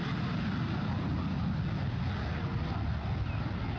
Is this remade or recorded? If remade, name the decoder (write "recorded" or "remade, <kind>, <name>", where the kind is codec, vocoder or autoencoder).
recorded